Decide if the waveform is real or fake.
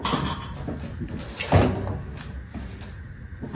real